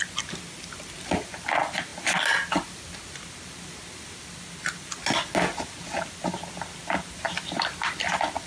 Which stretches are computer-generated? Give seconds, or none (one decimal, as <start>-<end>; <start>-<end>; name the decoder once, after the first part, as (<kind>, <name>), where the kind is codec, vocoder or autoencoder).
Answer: none